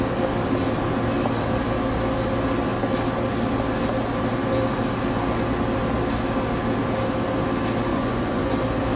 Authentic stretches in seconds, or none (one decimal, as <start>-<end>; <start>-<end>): 0.0-7.9; 8.5-9.0